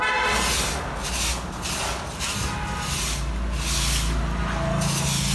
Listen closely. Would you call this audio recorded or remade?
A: recorded